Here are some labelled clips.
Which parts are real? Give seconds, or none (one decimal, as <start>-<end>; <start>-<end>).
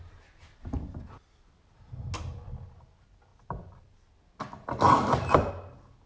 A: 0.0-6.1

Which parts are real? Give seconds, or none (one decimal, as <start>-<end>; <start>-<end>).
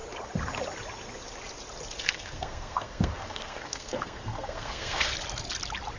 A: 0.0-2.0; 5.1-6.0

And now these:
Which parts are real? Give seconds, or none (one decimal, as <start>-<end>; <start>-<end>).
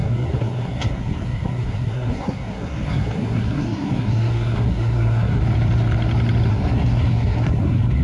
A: 5.4-6.5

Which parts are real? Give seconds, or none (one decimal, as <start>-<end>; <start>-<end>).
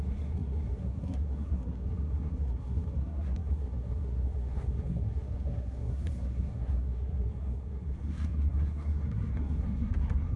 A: none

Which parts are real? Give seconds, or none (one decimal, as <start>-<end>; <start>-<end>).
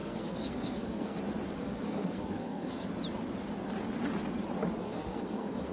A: 1.2-1.6; 2.9-4.8